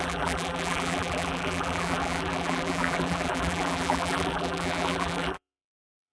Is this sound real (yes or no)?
no